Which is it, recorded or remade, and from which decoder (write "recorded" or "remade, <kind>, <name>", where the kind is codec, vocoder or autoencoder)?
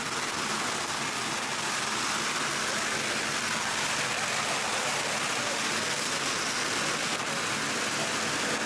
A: recorded